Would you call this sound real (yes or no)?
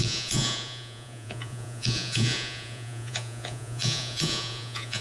no